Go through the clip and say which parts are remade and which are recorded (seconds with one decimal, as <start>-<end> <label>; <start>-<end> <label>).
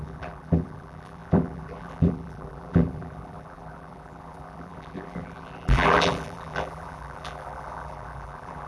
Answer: 0.0-8.7 remade